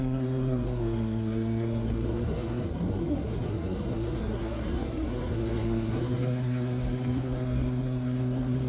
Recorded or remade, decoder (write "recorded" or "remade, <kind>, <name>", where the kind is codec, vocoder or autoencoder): remade, codec, SNAC